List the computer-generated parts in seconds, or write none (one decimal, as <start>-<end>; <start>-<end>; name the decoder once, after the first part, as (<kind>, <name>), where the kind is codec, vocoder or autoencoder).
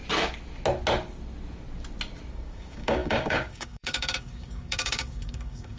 2.3-5.8 (codec, DAC)